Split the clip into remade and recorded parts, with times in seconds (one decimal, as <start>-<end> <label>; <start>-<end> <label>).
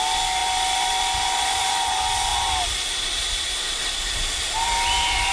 0.0-2.3 recorded; 2.3-5.3 remade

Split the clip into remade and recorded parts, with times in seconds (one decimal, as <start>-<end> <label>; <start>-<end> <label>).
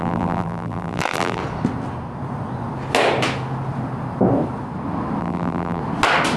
0.0-1.4 remade; 1.4-5.2 recorded; 5.2-5.8 remade; 5.8-6.4 recorded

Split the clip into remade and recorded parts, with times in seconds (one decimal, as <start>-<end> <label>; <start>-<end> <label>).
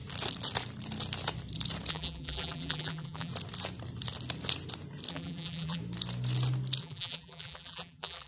0.0-1.9 recorded; 1.9-3.3 remade; 3.3-5.1 recorded; 5.1-5.8 remade; 5.8-6.8 recorded; 6.8-8.3 remade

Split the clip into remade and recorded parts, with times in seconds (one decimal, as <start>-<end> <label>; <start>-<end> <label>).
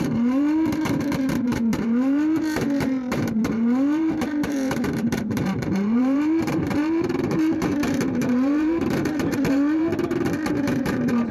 0.0-9.9 remade; 9.9-10.5 recorded; 10.5-11.3 remade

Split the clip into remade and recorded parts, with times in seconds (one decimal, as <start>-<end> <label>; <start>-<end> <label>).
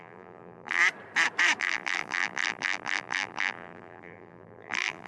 0.0-0.8 remade; 0.8-1.6 recorded; 1.6-5.1 remade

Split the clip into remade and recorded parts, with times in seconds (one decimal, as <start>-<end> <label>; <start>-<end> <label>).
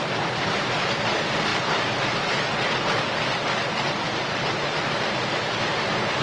0.0-6.2 recorded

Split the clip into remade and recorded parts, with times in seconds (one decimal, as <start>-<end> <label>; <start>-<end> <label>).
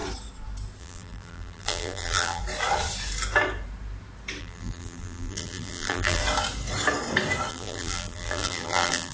0.0-0.8 recorded; 0.8-2.4 remade; 2.4-4.4 recorded; 4.4-6.2 remade; 6.2-7.5 recorded; 7.5-9.1 remade